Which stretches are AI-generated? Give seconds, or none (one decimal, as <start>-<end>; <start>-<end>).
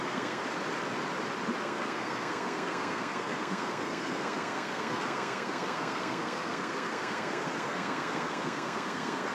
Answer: 0.0-0.4; 1.6-9.3